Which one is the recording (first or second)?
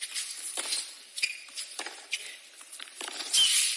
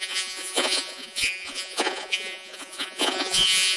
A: first